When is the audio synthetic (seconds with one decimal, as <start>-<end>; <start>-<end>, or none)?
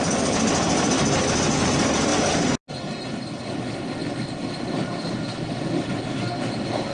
none